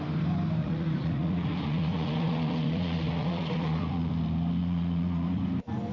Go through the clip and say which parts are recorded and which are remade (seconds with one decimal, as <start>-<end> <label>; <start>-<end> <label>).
0.0-0.6 recorded; 0.6-4.1 remade; 4.1-4.6 recorded; 4.6-5.4 remade; 5.4-5.9 recorded

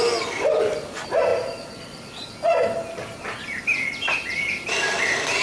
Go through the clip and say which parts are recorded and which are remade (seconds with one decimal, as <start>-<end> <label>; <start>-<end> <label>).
0.0-5.4 recorded

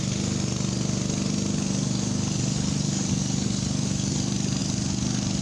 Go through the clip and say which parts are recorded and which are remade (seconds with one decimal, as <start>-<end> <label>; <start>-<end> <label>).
0.0-5.4 recorded

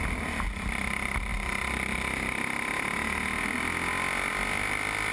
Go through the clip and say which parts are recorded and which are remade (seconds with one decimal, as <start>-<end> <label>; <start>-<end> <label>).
0.0-5.1 recorded

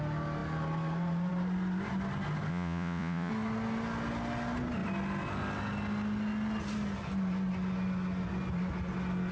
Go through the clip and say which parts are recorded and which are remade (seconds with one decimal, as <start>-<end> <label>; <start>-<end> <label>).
0.0-2.5 recorded; 2.5-3.3 remade; 3.3-9.3 recorded

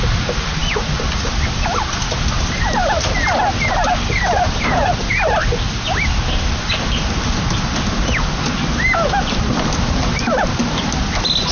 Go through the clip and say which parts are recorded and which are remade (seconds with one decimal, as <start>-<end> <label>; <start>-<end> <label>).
0.0-11.5 recorded

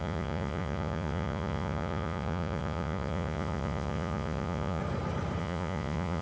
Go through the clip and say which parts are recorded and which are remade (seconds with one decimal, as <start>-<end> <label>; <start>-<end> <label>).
0.0-4.8 remade; 4.8-5.4 recorded; 5.4-6.2 remade